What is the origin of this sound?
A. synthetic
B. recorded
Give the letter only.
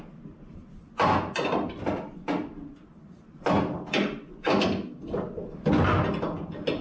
B